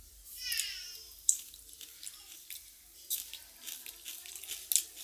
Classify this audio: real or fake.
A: real